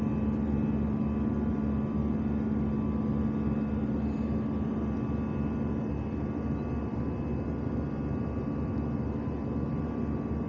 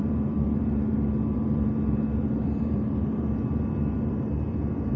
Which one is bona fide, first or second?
first